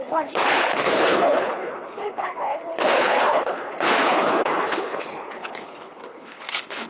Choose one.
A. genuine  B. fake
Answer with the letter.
B